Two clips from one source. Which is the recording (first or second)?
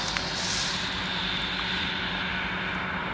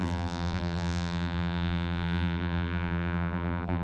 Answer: first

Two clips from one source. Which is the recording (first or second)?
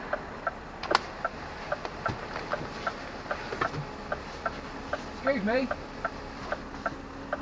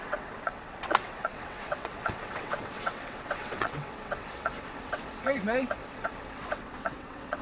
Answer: first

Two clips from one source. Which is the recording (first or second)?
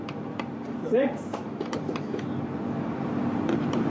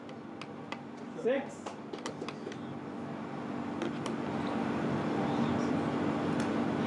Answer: second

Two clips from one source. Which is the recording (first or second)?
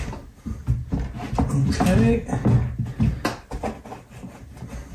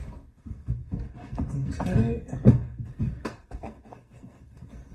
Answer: first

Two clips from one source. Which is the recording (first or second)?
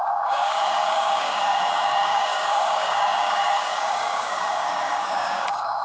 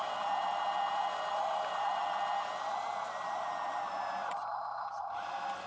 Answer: second